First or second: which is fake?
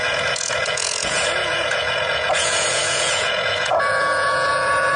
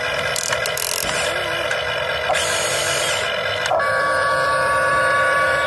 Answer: first